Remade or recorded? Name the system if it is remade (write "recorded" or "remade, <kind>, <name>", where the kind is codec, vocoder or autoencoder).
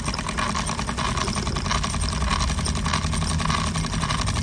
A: recorded